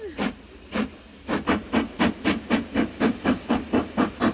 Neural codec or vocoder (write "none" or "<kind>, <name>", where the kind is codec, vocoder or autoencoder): none